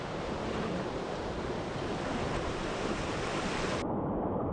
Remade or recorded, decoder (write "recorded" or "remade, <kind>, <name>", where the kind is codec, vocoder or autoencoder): recorded